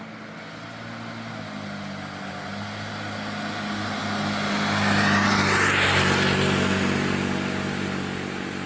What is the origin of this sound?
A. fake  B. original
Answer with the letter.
B